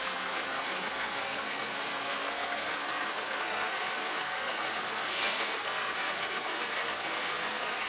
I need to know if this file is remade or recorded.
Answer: remade